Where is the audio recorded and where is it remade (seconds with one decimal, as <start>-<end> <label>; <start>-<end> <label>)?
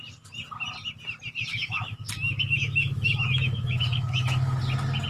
0.0-1.5 recorded; 1.5-4.6 remade; 4.6-5.1 recorded